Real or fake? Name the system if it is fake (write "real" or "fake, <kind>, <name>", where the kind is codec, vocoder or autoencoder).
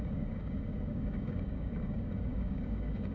fake, codec, DAC